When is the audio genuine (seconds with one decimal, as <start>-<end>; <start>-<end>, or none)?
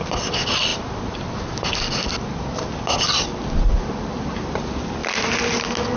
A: 0.0-6.0